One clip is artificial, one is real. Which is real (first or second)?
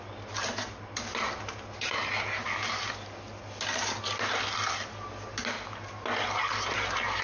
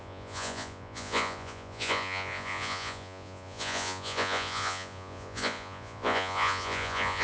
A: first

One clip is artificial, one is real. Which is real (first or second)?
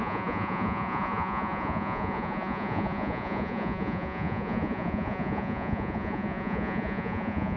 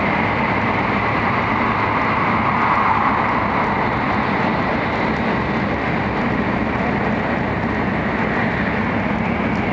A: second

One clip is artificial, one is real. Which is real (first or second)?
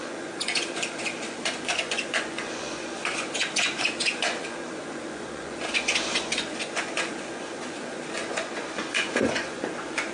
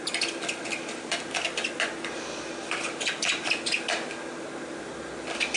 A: second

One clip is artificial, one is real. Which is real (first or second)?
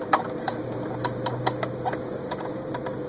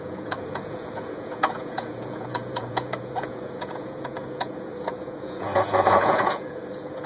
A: first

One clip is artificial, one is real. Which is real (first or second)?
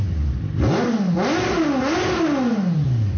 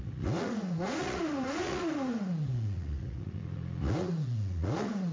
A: first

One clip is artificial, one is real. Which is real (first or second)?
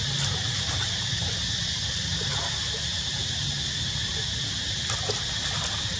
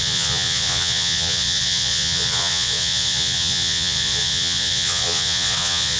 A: first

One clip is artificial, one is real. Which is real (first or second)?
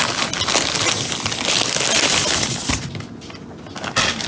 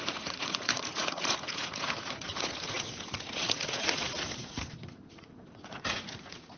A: first